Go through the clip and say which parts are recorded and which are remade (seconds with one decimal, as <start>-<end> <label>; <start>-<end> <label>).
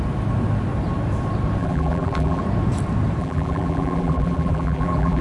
0.0-1.6 recorded; 1.6-2.4 remade; 2.4-3.2 recorded; 3.2-5.2 remade